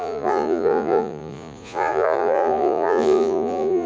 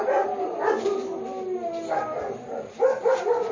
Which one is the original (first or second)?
second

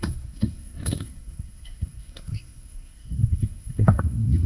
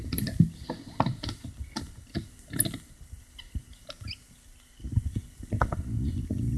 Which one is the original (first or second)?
second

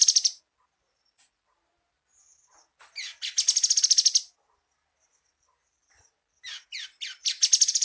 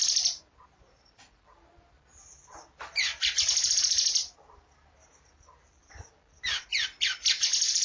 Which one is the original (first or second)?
first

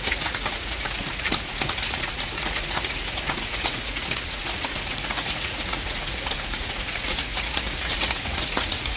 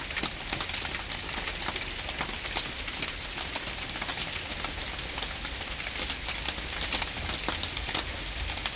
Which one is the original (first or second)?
second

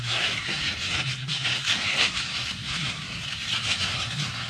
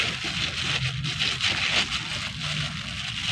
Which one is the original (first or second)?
second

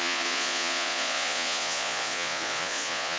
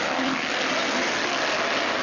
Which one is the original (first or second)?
second